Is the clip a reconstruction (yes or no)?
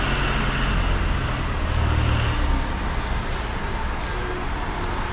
no